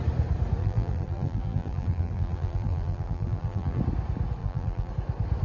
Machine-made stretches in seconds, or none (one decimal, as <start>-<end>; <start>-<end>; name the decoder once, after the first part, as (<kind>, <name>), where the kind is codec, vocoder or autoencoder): 0.6-3.8 (vocoder, BigVGAN v2); 4.4-4.9